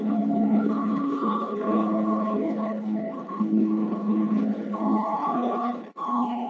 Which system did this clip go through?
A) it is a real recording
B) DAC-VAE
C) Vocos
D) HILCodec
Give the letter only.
D